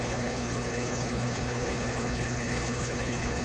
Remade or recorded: remade